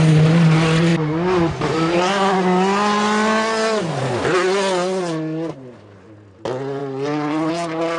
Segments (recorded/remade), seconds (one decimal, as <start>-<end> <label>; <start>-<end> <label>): 0.0-6.8 recorded; 6.8-7.5 remade; 7.5-8.0 recorded